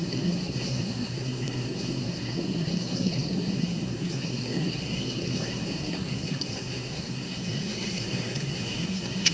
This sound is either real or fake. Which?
fake